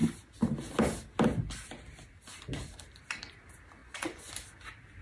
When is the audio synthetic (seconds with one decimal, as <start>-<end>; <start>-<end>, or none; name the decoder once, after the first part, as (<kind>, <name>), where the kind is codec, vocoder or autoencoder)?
3.8-4.3 (vocoder, Vocos)